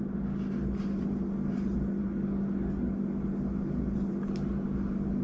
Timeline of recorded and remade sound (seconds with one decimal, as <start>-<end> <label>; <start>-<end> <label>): 0.0-2.0 recorded; 2.0-2.9 remade; 2.9-5.2 recorded